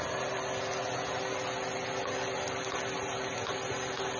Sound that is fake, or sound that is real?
real